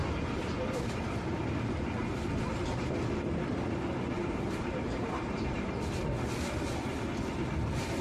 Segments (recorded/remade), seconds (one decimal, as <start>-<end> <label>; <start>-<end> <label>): 0.0-1.2 remade; 1.2-4.2 recorded; 4.2-5.8 remade; 5.8-8.0 recorded